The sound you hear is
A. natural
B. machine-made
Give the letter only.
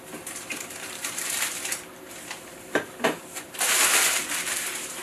B